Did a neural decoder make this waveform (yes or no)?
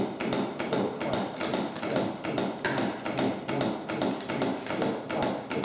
no